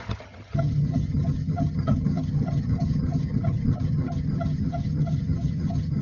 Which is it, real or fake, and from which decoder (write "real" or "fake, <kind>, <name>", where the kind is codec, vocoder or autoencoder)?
fake, vocoder, HiFi-GAN